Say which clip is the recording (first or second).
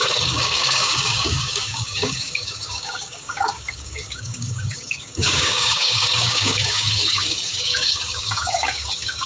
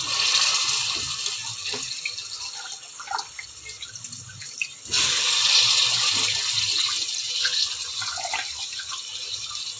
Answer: second